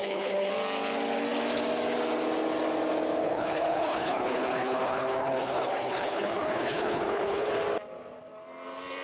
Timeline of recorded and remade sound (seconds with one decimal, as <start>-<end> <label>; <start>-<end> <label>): 0.0-0.5 remade; 0.5-3.2 recorded; 3.2-7.5 remade; 7.5-9.0 recorded